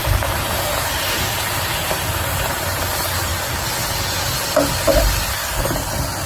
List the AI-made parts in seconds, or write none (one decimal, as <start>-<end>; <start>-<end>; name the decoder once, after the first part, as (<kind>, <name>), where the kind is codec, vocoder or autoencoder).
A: 0.0-2.8 (vocoder, BigVGAN v2)